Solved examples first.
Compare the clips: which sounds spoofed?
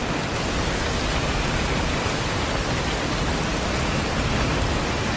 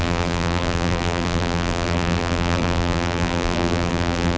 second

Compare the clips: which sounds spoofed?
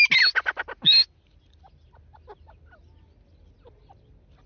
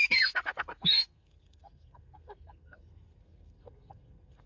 second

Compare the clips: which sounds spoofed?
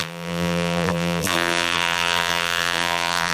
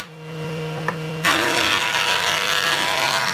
first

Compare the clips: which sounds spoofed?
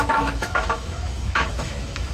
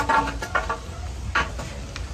first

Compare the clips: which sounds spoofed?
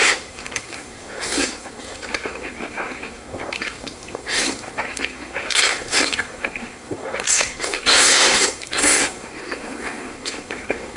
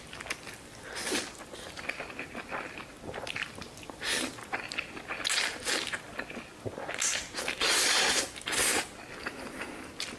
first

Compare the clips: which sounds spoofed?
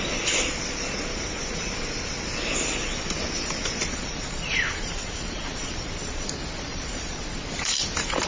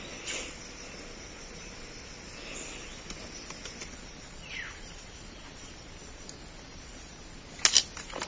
first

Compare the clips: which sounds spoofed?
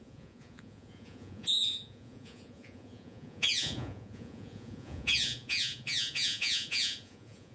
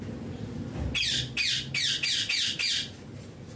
first